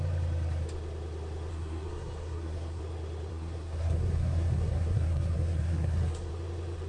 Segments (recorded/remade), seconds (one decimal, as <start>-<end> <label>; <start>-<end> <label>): 0.0-1.5 recorded; 1.5-2.8 remade; 2.8-3.3 recorded; 3.3-6.3 remade; 6.3-6.9 recorded